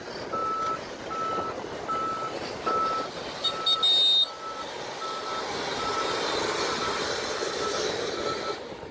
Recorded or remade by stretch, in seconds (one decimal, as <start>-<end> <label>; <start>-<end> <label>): 0.0-8.9 recorded